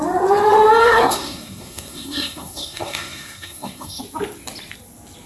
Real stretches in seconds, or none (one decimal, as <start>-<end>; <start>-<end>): 0.0-0.8; 4.0-5.3

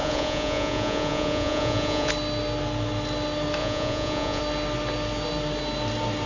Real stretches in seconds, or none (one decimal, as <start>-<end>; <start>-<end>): 2.1-3.6; 4.4-6.3

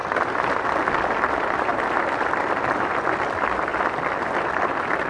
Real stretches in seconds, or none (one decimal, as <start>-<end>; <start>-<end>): 0.0-5.1